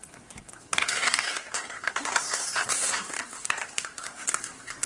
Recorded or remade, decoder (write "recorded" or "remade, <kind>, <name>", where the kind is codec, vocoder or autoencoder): remade, codec, SNAC